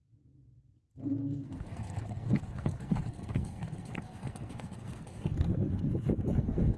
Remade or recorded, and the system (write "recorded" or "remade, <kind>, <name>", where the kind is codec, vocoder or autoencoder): remade, codec, SNAC